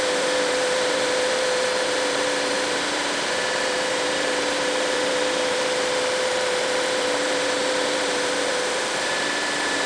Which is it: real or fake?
fake